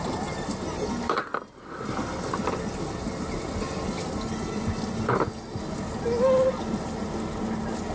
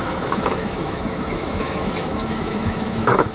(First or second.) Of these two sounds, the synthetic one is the second